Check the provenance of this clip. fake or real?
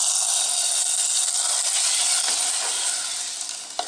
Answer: real